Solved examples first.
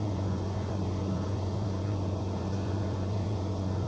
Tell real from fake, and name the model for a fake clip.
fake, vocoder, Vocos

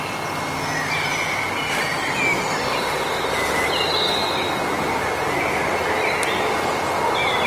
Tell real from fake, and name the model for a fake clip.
real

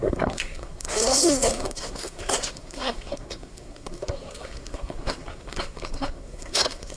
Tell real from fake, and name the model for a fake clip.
fake, codec, SNAC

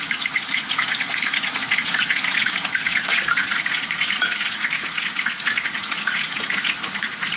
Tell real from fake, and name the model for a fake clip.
fake, vocoder, Vocos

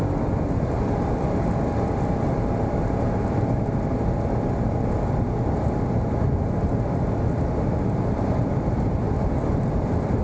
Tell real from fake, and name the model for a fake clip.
real